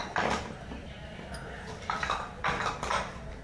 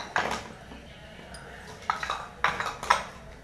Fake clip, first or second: first